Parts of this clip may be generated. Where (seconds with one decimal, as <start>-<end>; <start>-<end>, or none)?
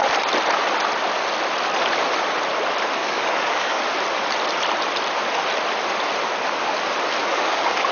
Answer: 3.0-3.8; 7.2-7.9